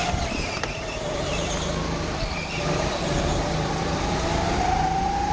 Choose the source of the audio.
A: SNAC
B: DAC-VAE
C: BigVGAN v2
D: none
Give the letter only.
C